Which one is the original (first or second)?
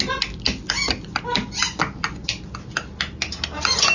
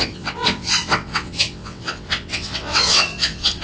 first